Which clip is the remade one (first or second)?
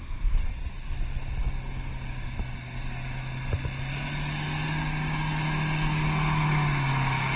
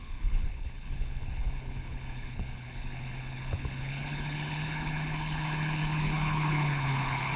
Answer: second